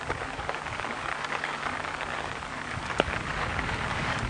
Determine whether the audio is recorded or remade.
remade